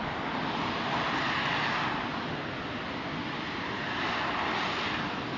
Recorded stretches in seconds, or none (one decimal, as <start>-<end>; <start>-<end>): 0.0-5.4